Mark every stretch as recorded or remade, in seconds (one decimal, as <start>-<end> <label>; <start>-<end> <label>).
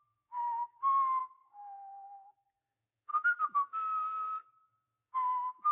0.0-5.7 remade